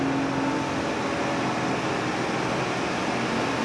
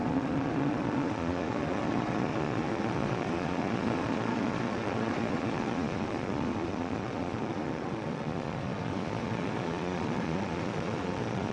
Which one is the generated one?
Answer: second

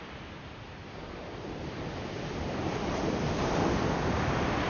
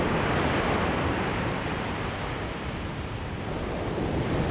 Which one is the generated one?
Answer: second